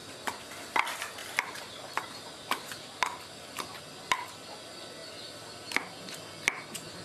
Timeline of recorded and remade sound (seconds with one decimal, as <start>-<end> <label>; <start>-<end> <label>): 0.0-0.7 remade; 0.7-1.2 recorded; 1.2-3.5 remade; 3.5-7.0 recorded